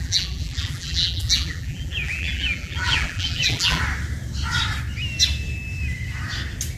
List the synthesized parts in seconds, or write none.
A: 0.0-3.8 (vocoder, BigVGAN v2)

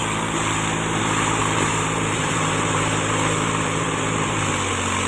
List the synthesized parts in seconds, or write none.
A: 1.4-4.5 (vocoder, BigVGAN v2)

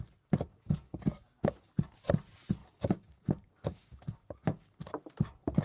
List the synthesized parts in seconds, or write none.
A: 0.5-1.7 (codec, DAC); 2.6-4.8

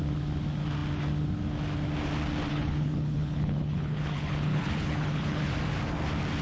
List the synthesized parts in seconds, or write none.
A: 2.5-5.4 (codec, HILCodec)

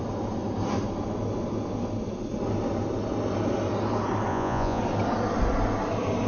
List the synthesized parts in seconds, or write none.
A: 4.3-4.8 (vocoder, Vocos)

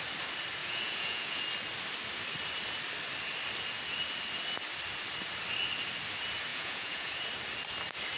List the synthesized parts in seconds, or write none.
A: 0.6-1.4 (vocoder, Vocos); 6.5-7.2